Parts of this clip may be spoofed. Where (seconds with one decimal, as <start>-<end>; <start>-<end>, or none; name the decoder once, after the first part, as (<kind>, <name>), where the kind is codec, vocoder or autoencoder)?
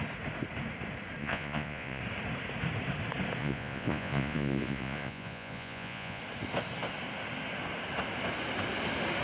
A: 1.2-2.0 (vocoder, Vocos); 3.4-6.2